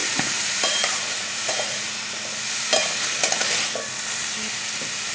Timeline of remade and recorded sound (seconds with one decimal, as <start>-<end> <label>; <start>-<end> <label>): 0.0-2.0 remade; 2.0-5.1 recorded